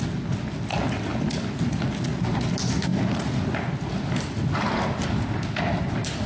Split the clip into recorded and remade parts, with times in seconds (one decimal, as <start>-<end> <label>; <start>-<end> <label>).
0.0-6.3 recorded